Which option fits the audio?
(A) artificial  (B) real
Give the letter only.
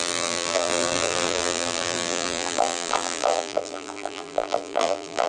A